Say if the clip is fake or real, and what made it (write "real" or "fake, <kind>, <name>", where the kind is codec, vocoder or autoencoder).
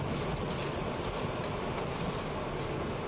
real